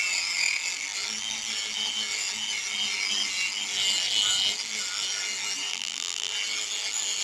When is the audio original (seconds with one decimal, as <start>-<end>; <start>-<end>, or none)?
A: 0.0-5.7; 6.3-7.2